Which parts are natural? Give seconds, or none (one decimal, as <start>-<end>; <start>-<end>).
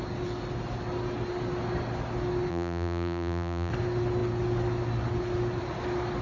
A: 0.0-2.5; 3.7-6.2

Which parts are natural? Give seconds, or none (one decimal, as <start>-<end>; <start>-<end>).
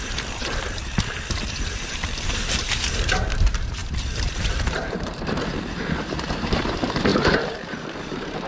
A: none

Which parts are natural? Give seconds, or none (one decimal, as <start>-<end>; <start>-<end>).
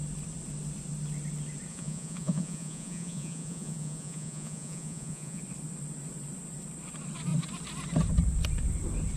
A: 0.0-1.7; 5.4-9.2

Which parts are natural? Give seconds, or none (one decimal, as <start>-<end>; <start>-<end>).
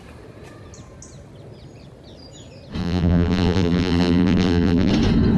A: 0.0-2.8; 4.9-5.4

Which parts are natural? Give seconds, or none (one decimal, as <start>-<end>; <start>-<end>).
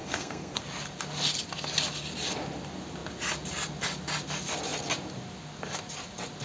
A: 0.6-6.4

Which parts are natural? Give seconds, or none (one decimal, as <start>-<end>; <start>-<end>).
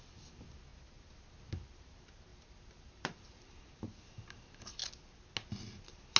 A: 0.0-2.3; 3.6-6.2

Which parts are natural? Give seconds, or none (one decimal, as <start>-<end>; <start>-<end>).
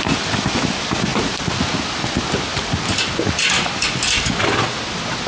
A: 0.0-5.3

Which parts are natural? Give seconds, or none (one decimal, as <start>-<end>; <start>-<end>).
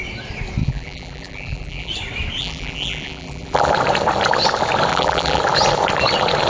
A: 0.0-0.6; 1.9-2.4; 3.7-4.9; 5.4-6.5